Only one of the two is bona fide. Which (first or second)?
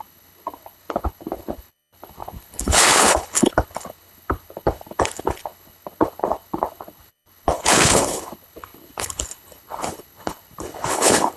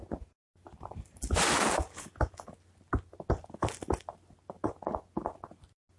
second